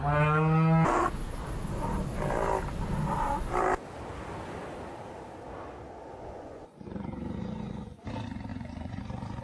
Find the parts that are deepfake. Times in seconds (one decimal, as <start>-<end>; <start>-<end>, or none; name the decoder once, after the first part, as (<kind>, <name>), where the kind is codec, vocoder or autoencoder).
6.1-8.1 (vocoder, Vocos); 8.5-9.0

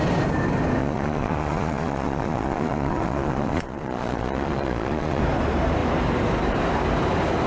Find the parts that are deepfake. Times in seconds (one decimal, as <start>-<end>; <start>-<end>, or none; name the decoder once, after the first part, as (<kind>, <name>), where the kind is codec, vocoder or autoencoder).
0.8-5.2 (vocoder, Vocos)

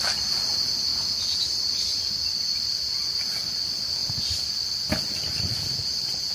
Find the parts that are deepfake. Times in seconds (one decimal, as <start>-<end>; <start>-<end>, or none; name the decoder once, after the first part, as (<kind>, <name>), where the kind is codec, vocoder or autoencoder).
none

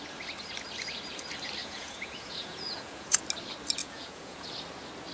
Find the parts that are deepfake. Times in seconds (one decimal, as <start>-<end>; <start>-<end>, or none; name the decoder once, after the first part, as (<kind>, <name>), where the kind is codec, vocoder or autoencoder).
1.6-3.2 (vocoder, Vocos); 3.8-4.5

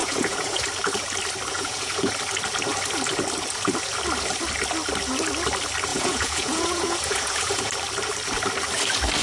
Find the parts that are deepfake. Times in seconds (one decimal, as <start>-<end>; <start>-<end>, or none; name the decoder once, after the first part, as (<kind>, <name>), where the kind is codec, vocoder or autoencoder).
0.0-0.6 (vocoder, Vocos); 1.5-2.1; 5.9-7.7

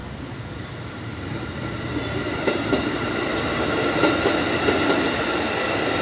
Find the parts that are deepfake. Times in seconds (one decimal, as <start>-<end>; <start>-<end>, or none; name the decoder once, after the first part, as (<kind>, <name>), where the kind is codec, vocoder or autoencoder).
none